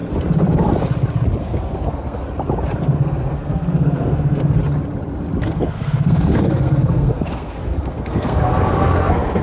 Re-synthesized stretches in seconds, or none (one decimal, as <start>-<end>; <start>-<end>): 1.4-2.2; 2.8-4.6; 5.4-9.4